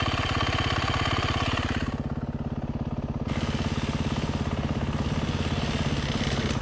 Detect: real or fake real